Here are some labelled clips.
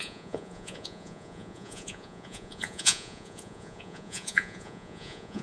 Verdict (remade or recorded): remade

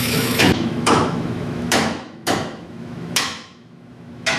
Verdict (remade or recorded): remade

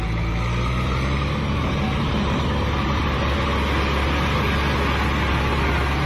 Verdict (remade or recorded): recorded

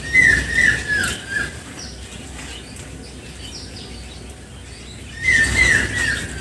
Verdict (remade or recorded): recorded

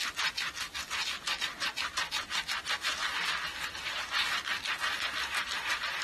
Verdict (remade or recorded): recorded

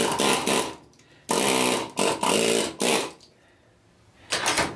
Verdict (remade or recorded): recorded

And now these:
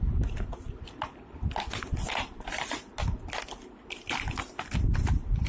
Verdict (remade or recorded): recorded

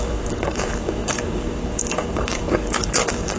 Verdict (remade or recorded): remade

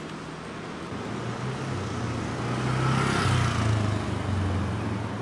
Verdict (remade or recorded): recorded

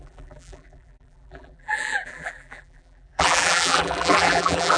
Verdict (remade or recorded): remade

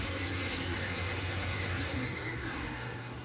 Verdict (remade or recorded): remade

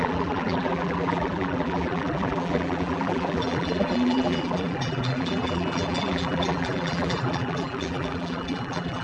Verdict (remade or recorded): remade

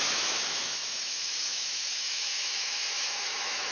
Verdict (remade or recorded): remade